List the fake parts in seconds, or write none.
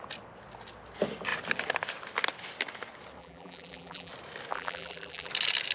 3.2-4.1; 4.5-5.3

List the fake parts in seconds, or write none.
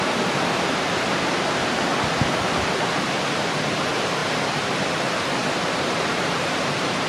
0.0-1.9; 3.6-4.2; 5.8-7.1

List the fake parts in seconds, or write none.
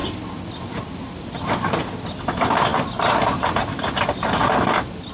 0.0-1.5; 2.7-3.6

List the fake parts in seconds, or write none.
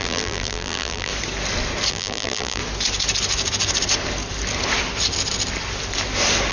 0.0-1.1; 1.9-2.6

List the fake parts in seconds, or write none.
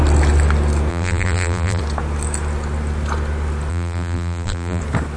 0.9-1.8; 3.7-4.8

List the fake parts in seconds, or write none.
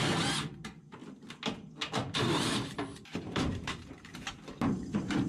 0.0-1.0; 2.2-4.1; 4.7-5.3